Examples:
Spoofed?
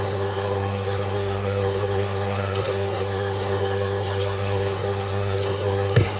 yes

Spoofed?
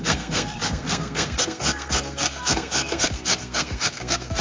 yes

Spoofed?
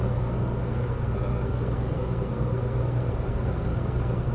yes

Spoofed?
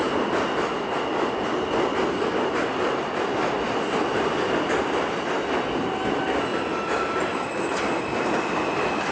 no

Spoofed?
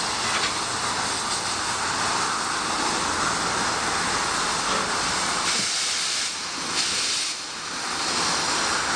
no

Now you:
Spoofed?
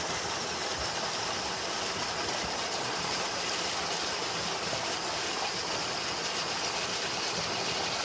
no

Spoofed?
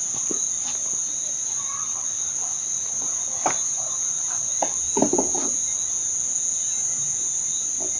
no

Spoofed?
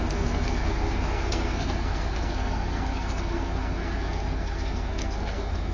yes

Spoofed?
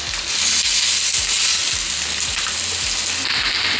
no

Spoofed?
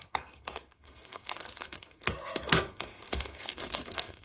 yes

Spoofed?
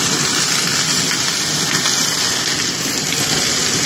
no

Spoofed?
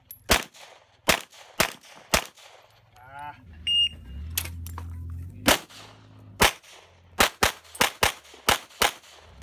no